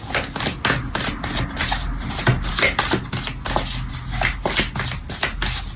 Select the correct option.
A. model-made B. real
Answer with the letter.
B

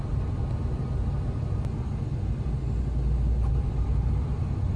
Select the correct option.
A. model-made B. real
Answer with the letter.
B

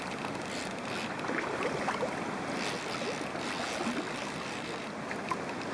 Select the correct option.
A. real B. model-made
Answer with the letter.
A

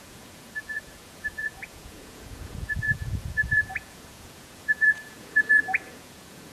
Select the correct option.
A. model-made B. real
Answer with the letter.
A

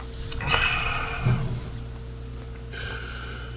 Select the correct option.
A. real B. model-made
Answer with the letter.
A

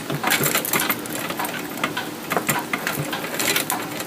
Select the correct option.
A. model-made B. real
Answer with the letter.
B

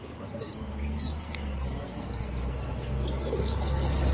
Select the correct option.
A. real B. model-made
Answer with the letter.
B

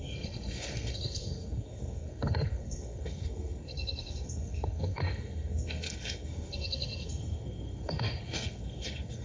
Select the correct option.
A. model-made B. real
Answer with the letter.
A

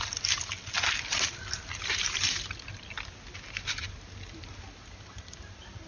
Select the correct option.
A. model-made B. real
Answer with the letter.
B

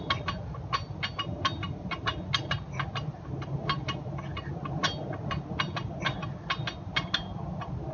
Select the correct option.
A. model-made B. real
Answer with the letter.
B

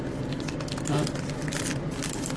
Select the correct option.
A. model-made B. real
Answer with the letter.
B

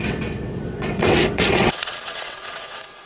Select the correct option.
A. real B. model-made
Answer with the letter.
B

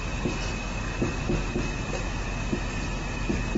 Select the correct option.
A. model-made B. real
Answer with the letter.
B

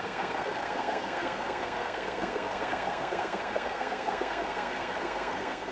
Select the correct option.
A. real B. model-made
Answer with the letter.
B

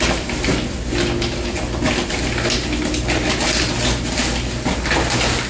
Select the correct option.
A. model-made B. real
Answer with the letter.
B